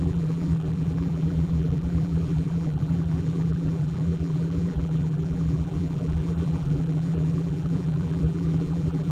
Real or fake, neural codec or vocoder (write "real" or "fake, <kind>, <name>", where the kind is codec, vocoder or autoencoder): fake, vocoder, BigVGAN v2